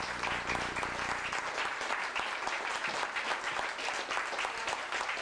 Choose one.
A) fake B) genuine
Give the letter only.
B